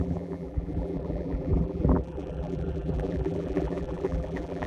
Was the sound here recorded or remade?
remade